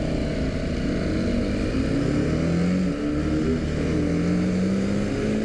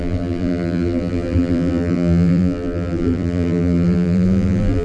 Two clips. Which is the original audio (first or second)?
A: first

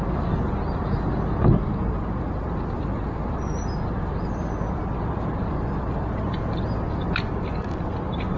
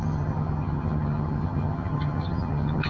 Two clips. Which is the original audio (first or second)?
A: first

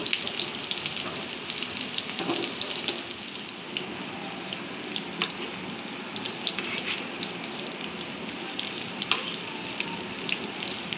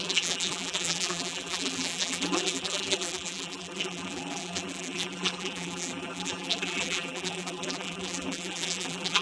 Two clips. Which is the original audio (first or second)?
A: first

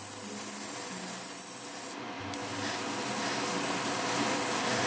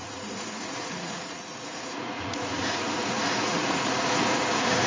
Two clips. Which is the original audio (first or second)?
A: first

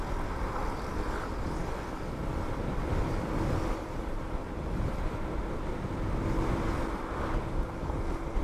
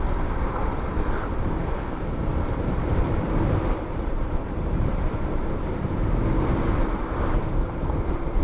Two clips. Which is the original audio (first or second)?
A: first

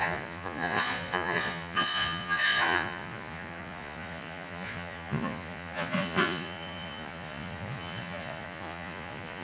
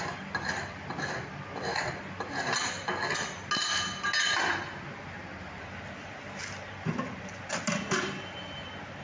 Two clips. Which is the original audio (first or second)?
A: second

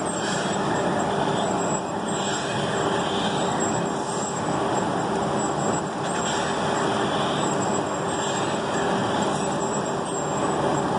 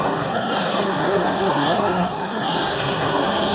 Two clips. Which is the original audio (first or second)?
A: first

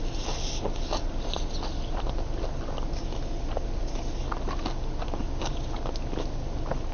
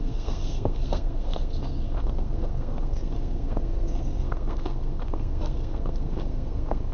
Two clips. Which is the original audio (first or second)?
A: first